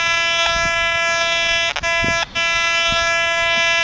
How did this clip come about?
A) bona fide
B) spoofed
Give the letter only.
A